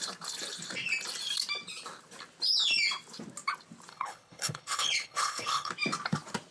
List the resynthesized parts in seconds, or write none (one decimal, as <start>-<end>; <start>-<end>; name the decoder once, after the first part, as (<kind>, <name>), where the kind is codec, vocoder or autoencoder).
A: 3.9-5.7 (codec, HILCodec)